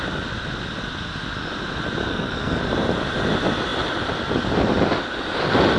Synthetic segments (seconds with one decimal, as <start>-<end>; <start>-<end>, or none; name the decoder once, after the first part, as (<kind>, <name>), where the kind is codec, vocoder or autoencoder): 2.0-2.6 (codec, SNAC)